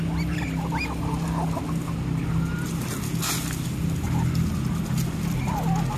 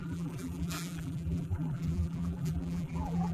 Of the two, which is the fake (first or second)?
second